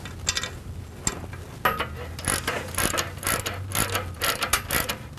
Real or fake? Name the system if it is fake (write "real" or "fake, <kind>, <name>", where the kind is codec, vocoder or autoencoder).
real